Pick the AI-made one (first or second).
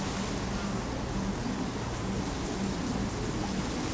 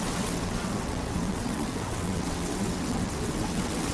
second